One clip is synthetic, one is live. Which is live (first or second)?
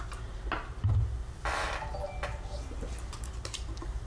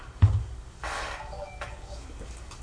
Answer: first